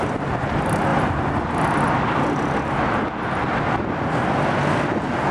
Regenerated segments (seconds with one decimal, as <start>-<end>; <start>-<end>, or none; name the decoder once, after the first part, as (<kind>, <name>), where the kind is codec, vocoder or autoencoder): none